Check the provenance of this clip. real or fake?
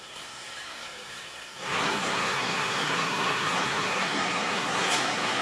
fake